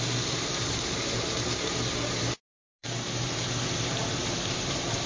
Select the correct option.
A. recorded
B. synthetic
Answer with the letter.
B